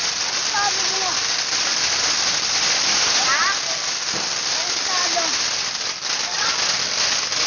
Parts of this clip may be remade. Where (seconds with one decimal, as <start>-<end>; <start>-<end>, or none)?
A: none